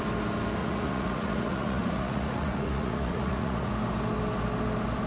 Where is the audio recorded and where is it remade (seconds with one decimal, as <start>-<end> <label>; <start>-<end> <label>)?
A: 0.0-0.6 recorded; 0.6-3.7 remade; 3.7-5.1 recorded